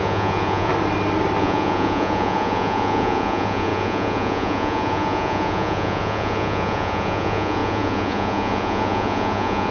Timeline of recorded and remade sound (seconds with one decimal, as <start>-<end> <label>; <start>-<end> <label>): 0.0-0.7 remade; 0.7-1.4 recorded; 1.4-9.7 remade